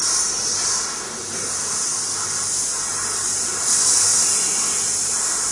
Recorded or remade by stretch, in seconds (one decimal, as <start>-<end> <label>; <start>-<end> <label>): 0.0-1.9 remade; 1.9-2.7 recorded; 2.7-4.1 remade; 4.1-5.1 recorded; 5.1-5.5 remade